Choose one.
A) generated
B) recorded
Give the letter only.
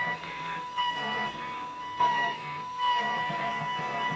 A